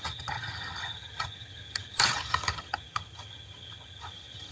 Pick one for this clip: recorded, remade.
remade